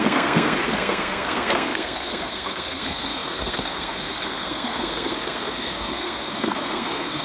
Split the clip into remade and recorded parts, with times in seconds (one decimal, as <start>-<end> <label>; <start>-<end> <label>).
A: 0.0-7.2 remade